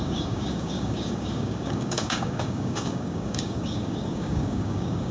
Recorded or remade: remade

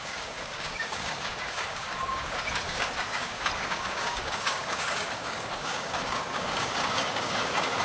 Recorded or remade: remade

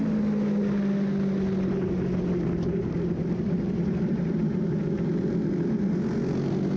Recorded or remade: recorded